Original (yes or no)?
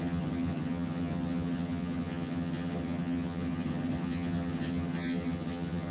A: no